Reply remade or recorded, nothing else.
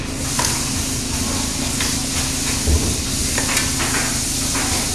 recorded